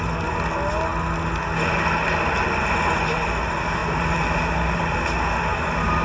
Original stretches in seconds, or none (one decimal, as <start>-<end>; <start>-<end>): 0.0-3.8; 5.4-6.0